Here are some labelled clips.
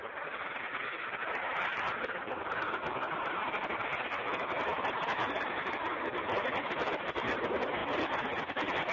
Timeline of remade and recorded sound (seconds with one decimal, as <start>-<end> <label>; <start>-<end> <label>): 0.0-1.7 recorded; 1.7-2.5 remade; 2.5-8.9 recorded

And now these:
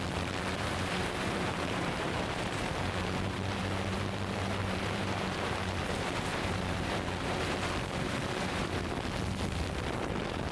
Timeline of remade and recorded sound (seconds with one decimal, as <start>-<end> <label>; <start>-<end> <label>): 0.0-0.5 recorded; 0.5-3.6 remade; 3.6-4.6 recorded; 4.6-8.9 remade; 8.9-10.5 recorded

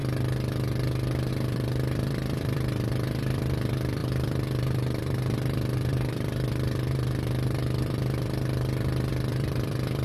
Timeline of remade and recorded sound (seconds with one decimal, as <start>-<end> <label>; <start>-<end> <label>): 0.0-1.3 recorded; 1.3-10.0 remade

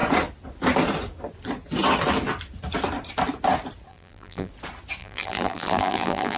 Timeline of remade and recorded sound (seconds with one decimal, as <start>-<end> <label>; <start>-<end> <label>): 0.0-3.9 recorded; 3.9-4.5 remade; 4.5-5.0 recorded; 5.0-6.4 remade